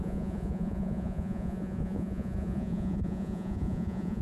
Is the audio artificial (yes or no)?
yes